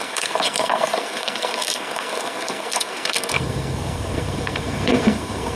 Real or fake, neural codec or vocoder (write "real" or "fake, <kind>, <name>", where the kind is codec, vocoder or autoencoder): fake, codec, SNAC